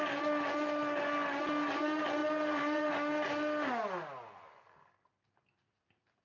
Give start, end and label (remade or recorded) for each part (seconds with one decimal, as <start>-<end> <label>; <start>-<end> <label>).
0.0-2.2 recorded; 2.2-2.9 remade; 2.9-6.2 recorded